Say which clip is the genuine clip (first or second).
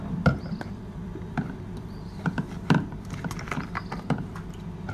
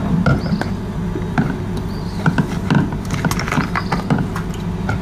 second